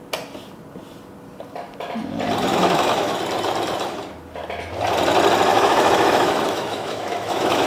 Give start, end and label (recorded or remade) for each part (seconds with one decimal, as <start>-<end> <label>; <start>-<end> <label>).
0.0-2.5 recorded; 2.5-3.2 remade; 3.2-5.5 recorded; 5.5-7.7 remade